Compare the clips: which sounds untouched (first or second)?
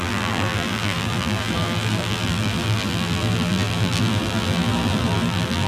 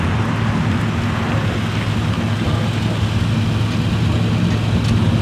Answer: second